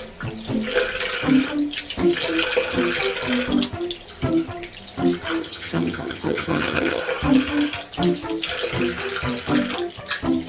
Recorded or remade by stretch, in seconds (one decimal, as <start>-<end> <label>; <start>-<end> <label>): 0.0-5.4 recorded; 5.4-7.0 remade; 7.0-10.5 recorded